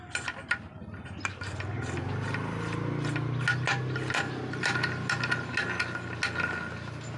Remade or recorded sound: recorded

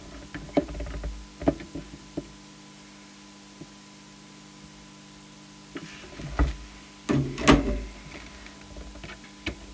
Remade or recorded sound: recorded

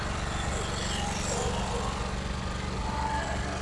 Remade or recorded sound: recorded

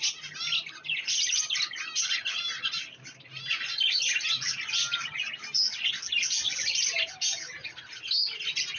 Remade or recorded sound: recorded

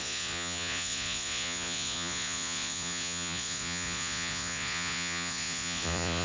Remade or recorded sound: remade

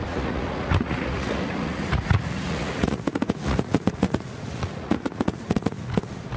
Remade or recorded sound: remade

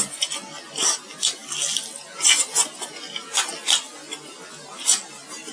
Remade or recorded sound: recorded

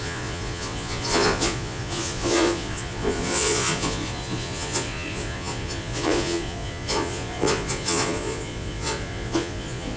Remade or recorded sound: remade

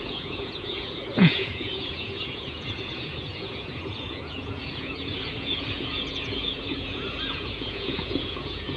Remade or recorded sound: remade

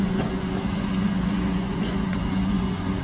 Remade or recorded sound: remade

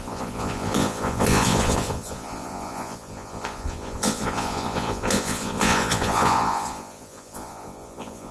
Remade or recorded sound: remade